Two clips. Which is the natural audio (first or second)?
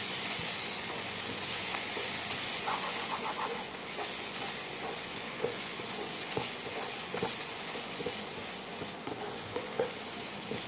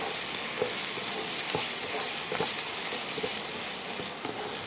second